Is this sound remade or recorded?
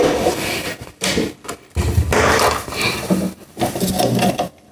recorded